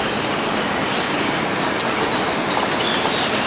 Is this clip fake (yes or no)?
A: no